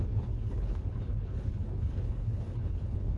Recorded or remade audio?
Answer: remade